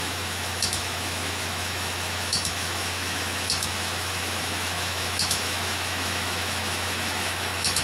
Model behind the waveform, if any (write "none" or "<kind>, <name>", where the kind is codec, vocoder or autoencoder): autoencoder, DAC-VAE